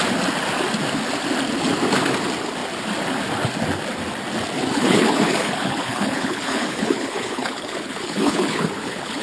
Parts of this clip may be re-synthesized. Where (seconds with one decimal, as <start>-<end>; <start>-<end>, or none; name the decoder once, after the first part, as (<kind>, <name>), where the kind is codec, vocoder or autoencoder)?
4.7-9.2 (codec, HILCodec)